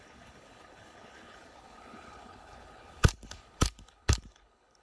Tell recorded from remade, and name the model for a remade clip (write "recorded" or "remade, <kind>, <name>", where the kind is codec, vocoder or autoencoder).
remade, codec, HILCodec